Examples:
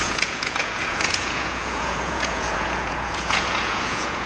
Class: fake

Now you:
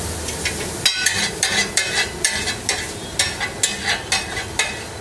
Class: real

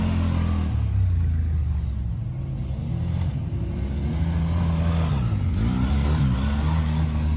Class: real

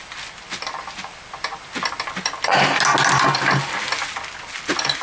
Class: real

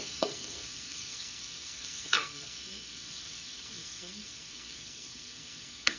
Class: fake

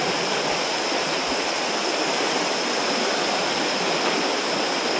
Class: real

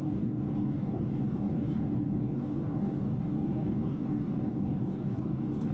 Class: fake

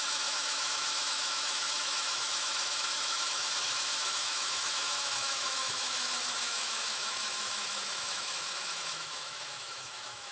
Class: fake